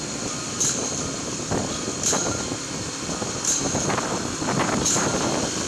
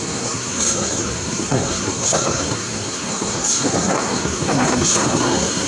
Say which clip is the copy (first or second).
second